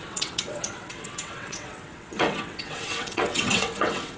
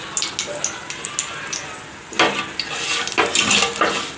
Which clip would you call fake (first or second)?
first